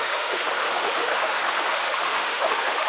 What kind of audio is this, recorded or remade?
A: remade